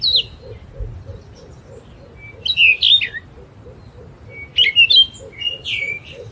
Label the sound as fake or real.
real